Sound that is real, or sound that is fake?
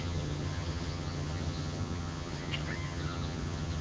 fake